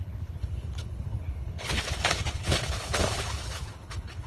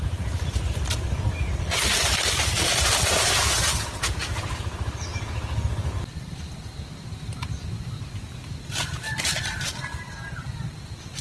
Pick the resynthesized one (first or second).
first